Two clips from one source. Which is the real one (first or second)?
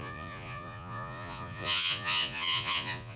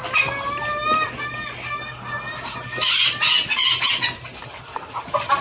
second